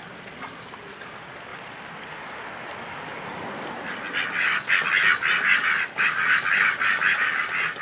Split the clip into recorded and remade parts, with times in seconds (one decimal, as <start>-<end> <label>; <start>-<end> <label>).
0.0-7.8 recorded